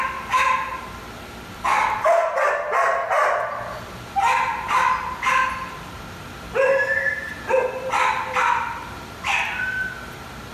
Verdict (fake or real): real